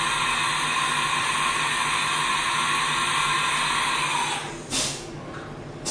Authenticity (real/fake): real